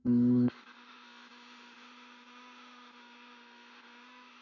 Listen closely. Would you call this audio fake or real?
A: fake